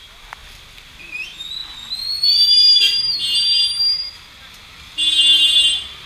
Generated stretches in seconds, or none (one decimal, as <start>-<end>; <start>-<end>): none